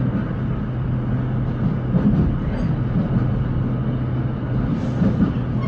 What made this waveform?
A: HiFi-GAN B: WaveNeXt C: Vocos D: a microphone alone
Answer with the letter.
D